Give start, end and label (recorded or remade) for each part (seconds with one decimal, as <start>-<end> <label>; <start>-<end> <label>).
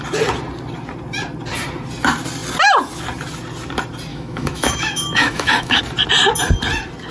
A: 0.0-4.1 recorded; 4.1-5.8 remade; 5.8-7.1 recorded